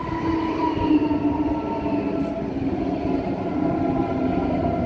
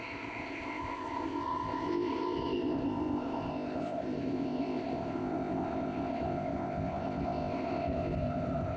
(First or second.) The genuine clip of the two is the first